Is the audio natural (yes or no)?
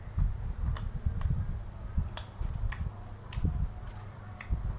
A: yes